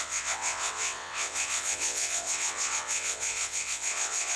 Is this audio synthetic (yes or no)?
yes